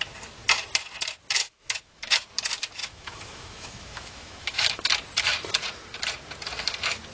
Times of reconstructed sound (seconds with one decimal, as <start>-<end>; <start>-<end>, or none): 1.4-2.3; 2.8-4.8